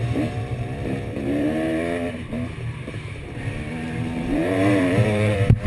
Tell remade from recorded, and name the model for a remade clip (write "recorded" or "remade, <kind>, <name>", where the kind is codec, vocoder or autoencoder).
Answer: remade, vocoder, BigVGAN v2